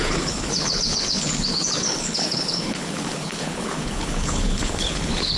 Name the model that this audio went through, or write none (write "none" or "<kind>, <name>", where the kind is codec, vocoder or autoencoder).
codec, HILCodec